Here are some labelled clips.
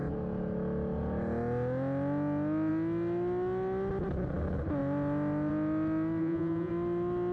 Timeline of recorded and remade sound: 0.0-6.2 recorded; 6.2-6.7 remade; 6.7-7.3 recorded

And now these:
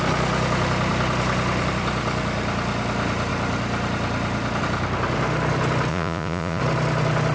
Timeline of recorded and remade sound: 0.0-5.9 recorded; 5.9-6.6 remade; 6.6-7.3 recorded

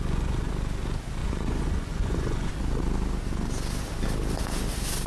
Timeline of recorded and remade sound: 0.0-0.5 remade; 0.5-1.2 recorded; 1.2-2.5 remade; 2.5-5.1 recorded

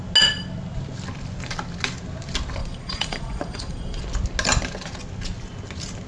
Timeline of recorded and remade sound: 0.0-2.6 recorded; 2.6-4.0 remade; 4.0-6.1 recorded

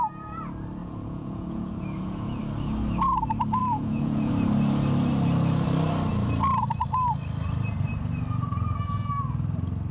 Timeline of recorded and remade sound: 0.0-0.8 recorded; 0.8-2.4 remade; 2.4-3.6 recorded; 3.6-4.3 remade; 4.3-9.9 recorded

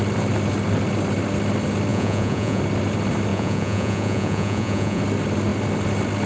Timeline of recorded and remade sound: 0.0-1.9 recorded; 1.9-2.6 remade; 2.6-3.3 recorded; 3.3-5.0 remade; 5.0-6.3 recorded

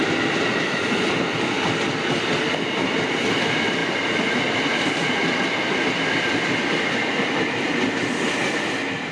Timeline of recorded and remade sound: 0.0-9.1 recorded

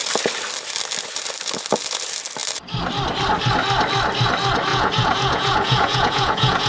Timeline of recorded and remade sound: 0.0-4.7 recorded; 4.7-6.7 remade